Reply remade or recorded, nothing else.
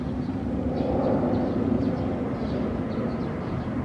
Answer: recorded